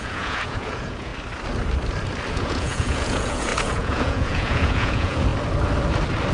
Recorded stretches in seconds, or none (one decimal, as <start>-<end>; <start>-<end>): 1.1-2.3; 5.3-6.3

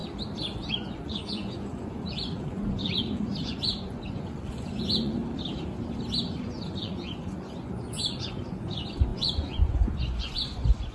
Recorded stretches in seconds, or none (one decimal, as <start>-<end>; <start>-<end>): 0.0-0.7; 5.2-6.2

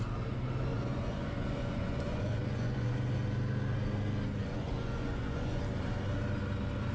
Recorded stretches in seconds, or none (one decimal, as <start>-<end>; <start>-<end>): 0.0-0.7; 2.9-4.4; 5.6-6.9

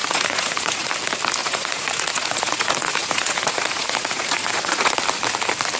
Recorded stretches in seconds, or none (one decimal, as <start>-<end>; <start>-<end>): 0.9-1.4; 4.9-5.8